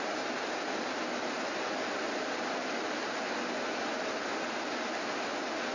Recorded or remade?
recorded